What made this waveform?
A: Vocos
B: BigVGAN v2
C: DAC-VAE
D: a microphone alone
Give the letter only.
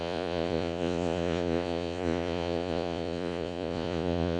A